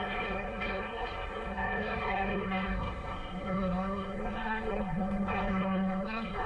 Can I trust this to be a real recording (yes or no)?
no